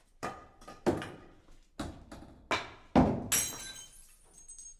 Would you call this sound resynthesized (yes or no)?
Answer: no